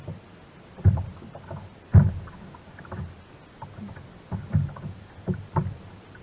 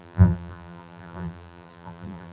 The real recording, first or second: first